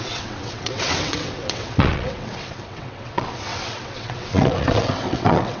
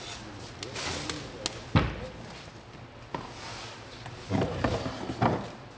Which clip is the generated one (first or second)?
first